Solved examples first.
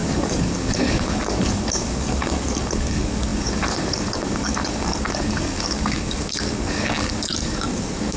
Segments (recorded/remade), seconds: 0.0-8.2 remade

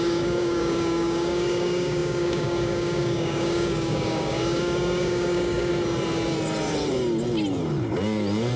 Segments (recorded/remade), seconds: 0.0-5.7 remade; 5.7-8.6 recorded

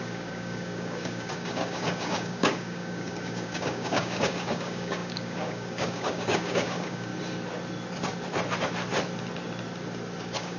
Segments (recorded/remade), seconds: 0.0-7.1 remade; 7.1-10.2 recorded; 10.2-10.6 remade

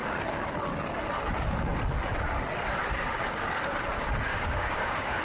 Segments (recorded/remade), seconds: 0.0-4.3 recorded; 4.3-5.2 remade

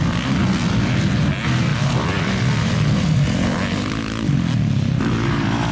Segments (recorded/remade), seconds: 0.0-5.7 recorded

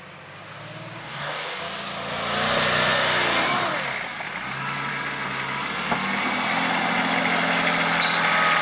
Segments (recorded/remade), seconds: 0.0-1.0 recorded; 1.0-1.6 remade; 1.6-8.6 recorded